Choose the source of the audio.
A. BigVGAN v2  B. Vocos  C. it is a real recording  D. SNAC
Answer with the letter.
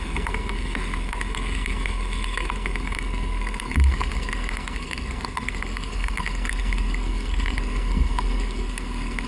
D